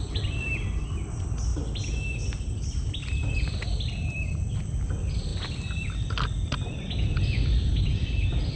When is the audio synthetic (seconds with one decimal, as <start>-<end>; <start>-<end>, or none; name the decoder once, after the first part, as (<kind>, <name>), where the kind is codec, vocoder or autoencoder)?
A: none